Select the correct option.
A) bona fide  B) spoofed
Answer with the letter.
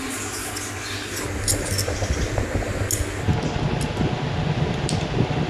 A